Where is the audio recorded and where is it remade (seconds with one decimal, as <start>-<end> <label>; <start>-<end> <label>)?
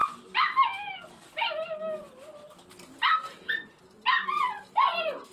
0.0-5.3 recorded